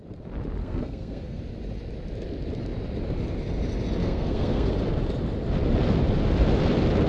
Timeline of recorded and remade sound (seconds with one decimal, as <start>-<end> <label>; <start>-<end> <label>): 0.0-0.6 recorded; 0.6-1.4 remade; 1.4-4.0 recorded; 4.0-4.7 remade; 4.7-7.1 recorded